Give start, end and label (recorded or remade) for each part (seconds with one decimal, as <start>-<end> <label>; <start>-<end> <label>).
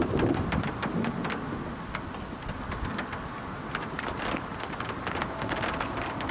0.0-6.3 recorded